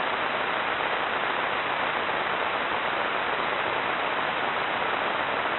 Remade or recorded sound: recorded